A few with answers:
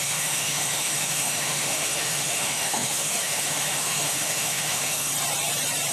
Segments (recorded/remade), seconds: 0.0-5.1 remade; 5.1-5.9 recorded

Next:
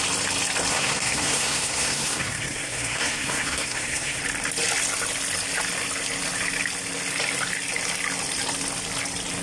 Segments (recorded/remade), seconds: 0.0-0.7 recorded; 0.7-4.2 remade; 4.2-9.4 recorded

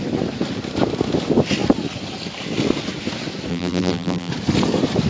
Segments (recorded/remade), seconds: 0.0-3.5 recorded; 3.5-4.3 remade; 4.3-5.1 recorded

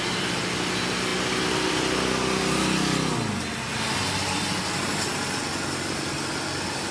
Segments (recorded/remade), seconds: 0.0-6.9 recorded

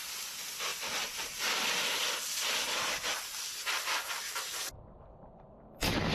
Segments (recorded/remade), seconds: 0.0-6.1 recorded

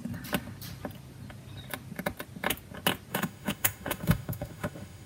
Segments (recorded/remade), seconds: 0.0-3.1 recorded; 3.1-5.1 remade

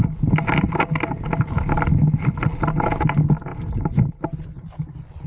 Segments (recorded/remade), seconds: 0.0-5.3 recorded